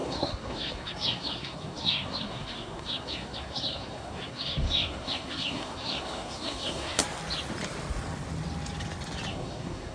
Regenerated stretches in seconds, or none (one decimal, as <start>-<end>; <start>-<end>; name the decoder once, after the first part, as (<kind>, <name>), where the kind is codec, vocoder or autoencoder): 0.0-7.0 (codec, SNAC); 9.3-9.9